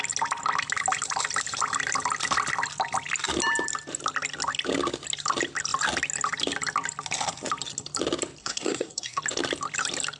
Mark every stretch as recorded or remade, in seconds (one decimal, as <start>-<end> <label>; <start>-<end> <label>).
0.0-8.4 recorded; 8.4-9.2 remade; 9.2-10.2 recorded

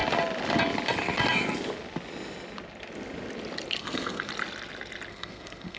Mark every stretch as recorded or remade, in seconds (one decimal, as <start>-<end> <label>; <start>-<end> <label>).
0.0-3.8 recorded; 3.8-4.3 remade; 4.3-5.1 recorded; 5.1-5.8 remade

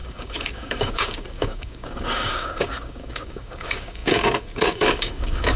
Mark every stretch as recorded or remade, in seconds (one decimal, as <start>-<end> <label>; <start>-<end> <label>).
0.0-5.6 remade

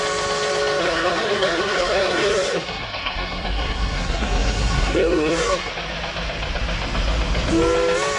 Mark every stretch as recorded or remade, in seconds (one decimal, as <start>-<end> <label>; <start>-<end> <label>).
0.0-0.8 recorded; 0.8-5.7 remade; 5.7-8.2 recorded

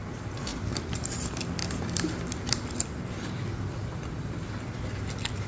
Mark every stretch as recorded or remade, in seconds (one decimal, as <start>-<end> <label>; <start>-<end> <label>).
0.0-0.5 recorded; 0.5-1.1 remade; 1.1-5.5 recorded

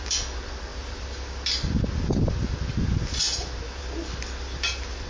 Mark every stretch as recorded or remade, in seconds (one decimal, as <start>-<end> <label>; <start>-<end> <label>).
0.0-5.1 recorded